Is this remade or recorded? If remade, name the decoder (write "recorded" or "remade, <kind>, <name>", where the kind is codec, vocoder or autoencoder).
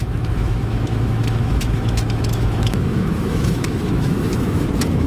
remade, autoencoder, DAC-VAE